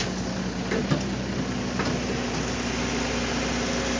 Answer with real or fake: real